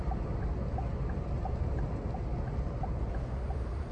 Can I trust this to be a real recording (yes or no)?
yes